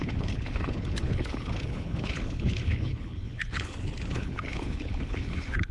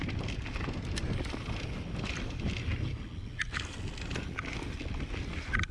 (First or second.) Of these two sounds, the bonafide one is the second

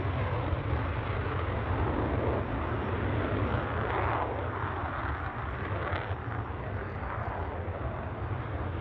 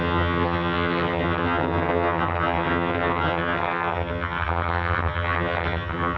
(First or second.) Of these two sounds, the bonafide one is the first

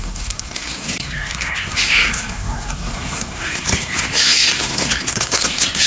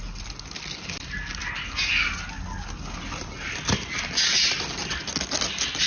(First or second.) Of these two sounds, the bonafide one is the second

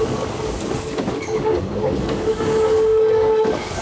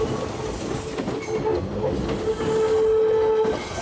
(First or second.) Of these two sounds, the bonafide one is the second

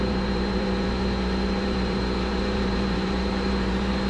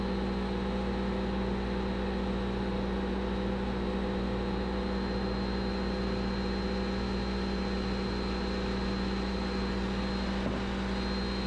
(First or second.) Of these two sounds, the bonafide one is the second